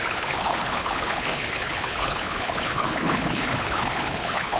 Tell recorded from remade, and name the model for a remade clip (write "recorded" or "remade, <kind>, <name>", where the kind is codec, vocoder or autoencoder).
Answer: remade, codec, HILCodec